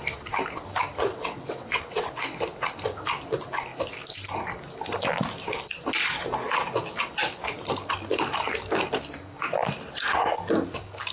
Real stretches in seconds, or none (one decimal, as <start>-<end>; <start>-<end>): 0.0-1.0; 2.1-11.1